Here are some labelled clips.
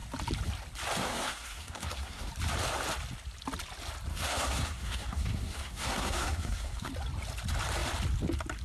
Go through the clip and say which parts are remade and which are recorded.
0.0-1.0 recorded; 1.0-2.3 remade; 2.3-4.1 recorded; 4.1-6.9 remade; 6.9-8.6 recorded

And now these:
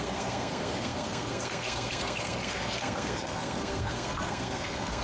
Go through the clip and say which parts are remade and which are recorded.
0.0-5.0 remade

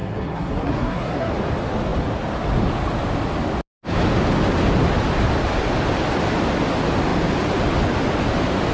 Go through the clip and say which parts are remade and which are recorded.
0.0-1.3 remade; 1.3-8.7 recorded